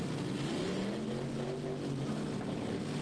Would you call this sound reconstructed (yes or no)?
no